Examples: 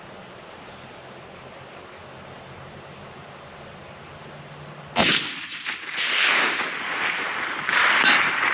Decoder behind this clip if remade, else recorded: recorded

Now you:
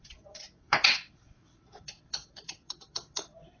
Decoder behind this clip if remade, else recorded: remade, vocoder, WaveNeXt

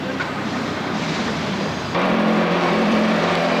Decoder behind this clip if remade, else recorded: remade, vocoder, BigVGAN v2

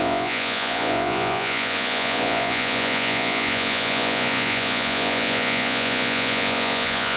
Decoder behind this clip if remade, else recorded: remade, vocoder, Vocos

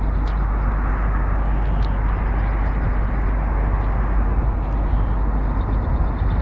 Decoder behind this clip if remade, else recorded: recorded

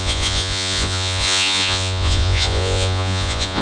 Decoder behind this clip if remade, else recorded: remade, vocoder, Vocos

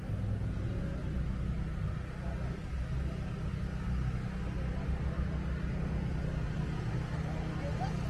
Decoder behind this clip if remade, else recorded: recorded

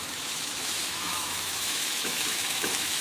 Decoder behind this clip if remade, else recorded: remade, autoencoder, DAC-VAE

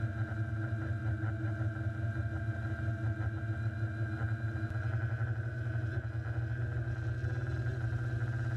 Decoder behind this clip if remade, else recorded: recorded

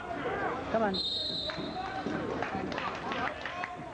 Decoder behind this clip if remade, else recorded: recorded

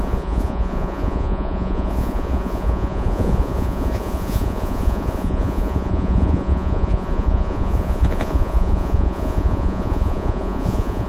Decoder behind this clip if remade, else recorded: remade, vocoder, Vocos